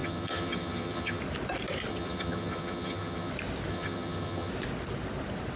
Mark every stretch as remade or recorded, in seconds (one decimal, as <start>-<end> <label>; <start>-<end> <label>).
0.0-1.2 remade; 1.2-1.9 recorded; 1.9-3.3 remade; 3.3-3.7 recorded; 3.7-4.5 remade; 4.5-5.6 recorded